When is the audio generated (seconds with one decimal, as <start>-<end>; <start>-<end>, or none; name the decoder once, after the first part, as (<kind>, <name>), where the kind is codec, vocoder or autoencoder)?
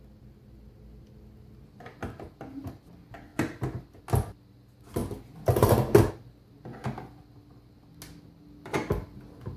5.0-6.1 (vocoder, BigVGAN v2)